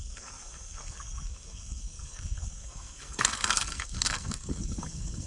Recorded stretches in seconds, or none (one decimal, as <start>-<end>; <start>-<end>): none